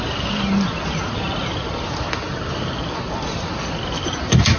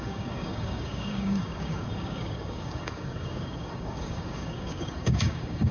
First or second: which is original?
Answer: first